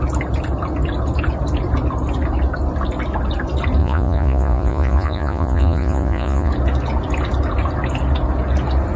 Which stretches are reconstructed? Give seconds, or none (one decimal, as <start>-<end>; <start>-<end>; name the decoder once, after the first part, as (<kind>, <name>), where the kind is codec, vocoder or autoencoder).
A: 3.8-6.5 (vocoder, Vocos)